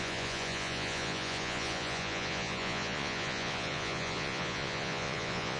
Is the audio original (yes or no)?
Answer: no